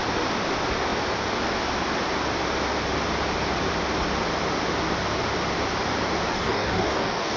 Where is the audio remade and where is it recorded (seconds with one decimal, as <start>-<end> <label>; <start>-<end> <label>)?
0.0-6.3 recorded; 6.3-7.4 remade

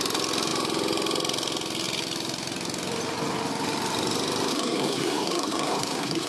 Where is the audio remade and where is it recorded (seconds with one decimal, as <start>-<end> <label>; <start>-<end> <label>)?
0.0-4.5 recorded; 4.5-6.3 remade

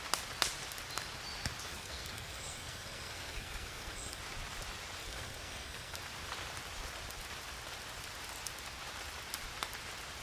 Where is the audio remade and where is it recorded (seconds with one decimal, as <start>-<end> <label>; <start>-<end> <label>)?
0.0-1.7 recorded; 1.7-4.2 remade; 4.2-5.0 recorded; 5.0-6.0 remade; 6.0-10.2 recorded

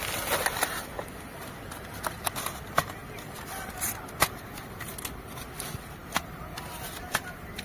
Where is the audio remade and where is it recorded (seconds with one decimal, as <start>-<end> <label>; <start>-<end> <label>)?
0.0-7.6 recorded

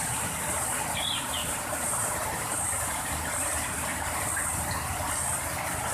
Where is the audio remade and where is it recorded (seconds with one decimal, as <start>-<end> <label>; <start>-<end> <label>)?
0.0-1.4 recorded; 1.4-3.5 remade; 3.5-5.9 recorded

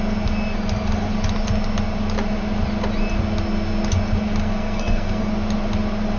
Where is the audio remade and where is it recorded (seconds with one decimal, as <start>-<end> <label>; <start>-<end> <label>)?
0.0-4.4 recorded; 4.4-5.3 remade; 5.3-6.2 recorded

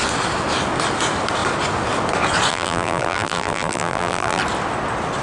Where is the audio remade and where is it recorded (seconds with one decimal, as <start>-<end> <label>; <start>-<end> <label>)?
0.0-2.5 recorded; 2.5-4.4 remade; 4.4-5.2 recorded

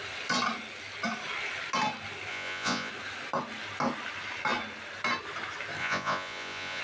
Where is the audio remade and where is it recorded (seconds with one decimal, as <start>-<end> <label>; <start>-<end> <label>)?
0.0-2.3 recorded; 2.3-2.9 remade; 2.9-5.8 recorded; 5.8-6.8 remade